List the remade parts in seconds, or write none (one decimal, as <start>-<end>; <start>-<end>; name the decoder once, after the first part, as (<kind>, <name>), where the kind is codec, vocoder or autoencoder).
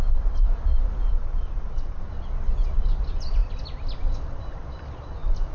1.1-2.0 (vocoder, Vocos)